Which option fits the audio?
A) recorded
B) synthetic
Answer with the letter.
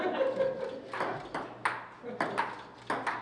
A